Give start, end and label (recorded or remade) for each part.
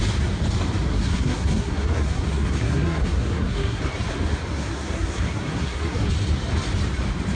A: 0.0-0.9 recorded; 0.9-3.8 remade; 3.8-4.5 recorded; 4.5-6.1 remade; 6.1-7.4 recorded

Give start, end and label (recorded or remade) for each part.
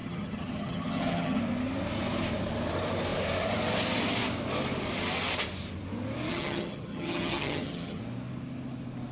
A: 0.0-1.4 remade; 1.4-6.3 recorded; 6.3-8.0 remade; 8.0-9.1 recorded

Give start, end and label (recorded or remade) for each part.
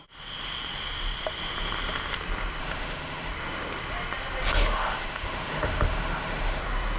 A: 0.0-2.6 recorded; 2.6-3.3 remade; 3.3-4.5 recorded; 4.5-6.6 remade; 6.6-7.0 recorded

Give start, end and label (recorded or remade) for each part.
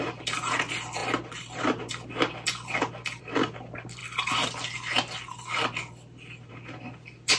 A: 0.0-7.4 recorded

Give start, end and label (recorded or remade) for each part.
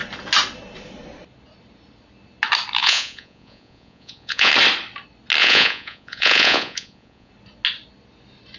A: 0.0-2.8 recorded; 2.8-4.5 remade; 4.5-5.4 recorded; 5.4-7.3 remade; 7.3-8.6 recorded